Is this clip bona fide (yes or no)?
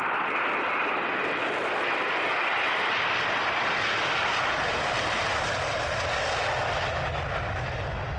yes